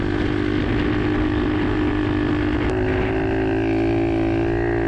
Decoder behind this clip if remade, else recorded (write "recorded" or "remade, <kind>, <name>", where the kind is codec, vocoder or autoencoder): recorded